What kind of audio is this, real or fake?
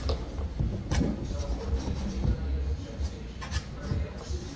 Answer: real